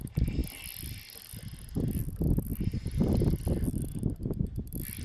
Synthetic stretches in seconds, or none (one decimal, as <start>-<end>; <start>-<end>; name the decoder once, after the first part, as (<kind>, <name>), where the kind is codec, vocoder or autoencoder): none